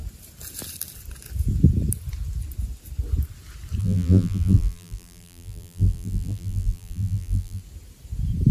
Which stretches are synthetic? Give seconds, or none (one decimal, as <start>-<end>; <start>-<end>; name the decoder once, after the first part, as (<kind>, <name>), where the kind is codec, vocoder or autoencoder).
3.8-7.6 (vocoder, BigVGAN v2)